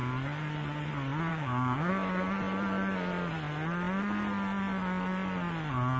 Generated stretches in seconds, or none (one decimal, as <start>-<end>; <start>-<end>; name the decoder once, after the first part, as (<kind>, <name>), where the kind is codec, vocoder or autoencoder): 1.3-1.9 (codec, DAC)